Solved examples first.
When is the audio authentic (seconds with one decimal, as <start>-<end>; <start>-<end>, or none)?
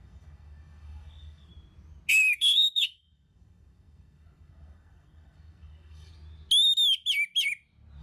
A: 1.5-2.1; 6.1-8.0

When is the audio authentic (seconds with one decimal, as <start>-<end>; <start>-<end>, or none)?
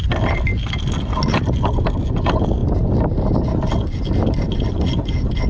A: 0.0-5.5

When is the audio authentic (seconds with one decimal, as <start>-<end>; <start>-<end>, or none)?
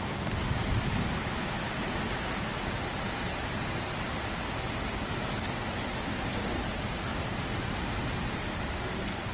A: 0.0-7.1; 8.2-9.3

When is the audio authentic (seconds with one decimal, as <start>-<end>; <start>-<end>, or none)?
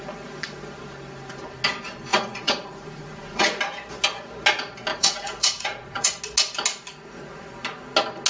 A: 0.0-2.1; 3.6-4.9; 6.2-8.3